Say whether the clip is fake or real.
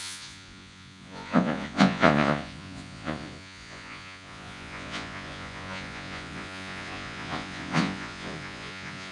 fake